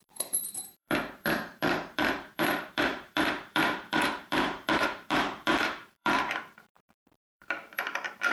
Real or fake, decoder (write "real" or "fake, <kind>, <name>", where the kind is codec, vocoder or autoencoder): fake, vocoder, BigVGAN v2